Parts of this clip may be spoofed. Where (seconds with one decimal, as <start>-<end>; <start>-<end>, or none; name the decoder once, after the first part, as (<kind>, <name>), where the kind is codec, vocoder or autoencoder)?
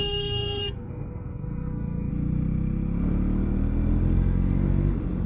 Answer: 0.0-2.1 (codec, SNAC)